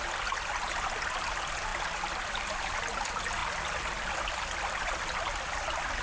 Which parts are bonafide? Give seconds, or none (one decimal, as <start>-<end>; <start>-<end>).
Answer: 0.0-6.0